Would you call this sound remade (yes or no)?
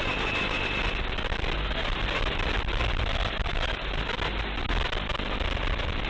no